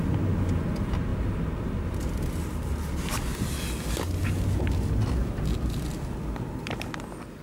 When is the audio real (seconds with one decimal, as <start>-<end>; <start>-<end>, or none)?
0.0-7.4